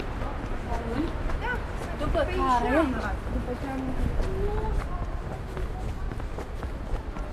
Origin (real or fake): real